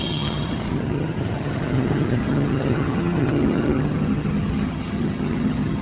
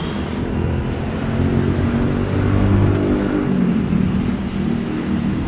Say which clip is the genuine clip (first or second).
second